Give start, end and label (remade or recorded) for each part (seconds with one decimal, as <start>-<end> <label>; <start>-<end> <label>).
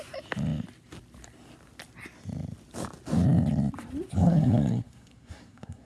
0.0-4.2 recorded; 4.2-5.9 remade